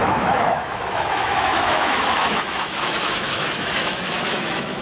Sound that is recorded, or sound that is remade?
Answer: remade